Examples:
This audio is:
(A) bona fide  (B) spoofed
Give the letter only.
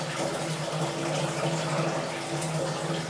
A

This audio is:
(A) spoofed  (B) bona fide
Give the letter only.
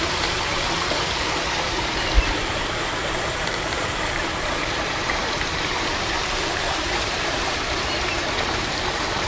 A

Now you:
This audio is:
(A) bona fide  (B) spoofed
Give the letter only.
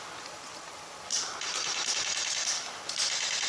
A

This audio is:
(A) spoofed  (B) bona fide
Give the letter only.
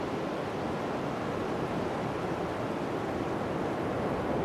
B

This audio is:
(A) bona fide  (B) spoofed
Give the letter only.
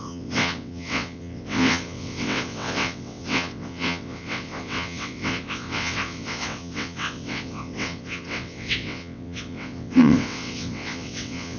B